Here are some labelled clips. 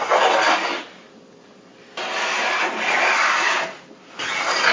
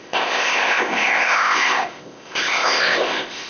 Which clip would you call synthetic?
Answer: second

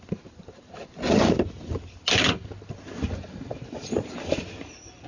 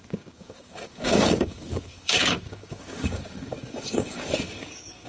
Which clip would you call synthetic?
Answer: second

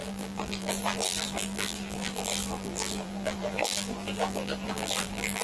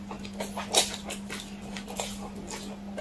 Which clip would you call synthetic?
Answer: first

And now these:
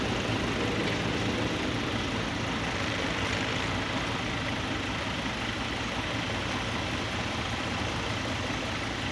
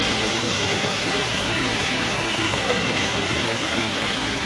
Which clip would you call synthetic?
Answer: second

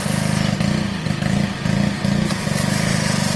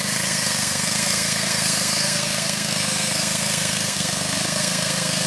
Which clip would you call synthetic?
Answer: second